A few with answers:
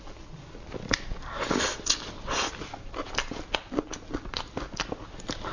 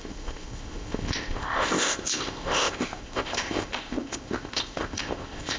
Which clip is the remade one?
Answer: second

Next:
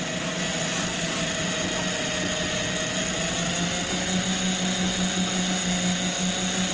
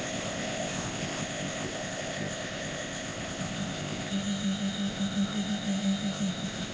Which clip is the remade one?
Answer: second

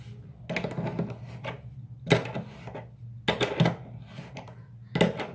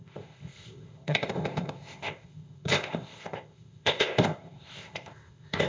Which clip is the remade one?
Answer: second